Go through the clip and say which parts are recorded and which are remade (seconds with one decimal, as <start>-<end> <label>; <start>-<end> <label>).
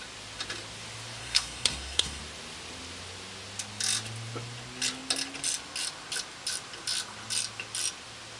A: 0.0-1.2 recorded; 1.2-2.2 remade; 2.2-8.4 recorded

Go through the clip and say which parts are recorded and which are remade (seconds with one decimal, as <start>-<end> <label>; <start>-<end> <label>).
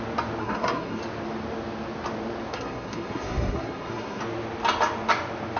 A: 0.0-0.4 recorded; 0.4-1.0 remade; 1.0-2.5 recorded; 2.5-4.2 remade; 4.2-5.6 recorded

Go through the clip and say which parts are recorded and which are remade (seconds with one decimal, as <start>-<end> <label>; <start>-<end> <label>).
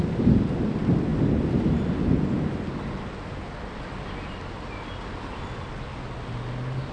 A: 0.0-6.9 recorded